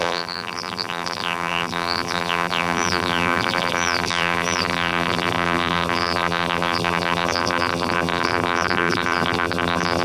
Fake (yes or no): yes